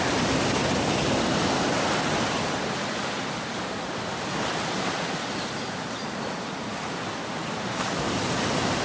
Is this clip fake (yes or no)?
no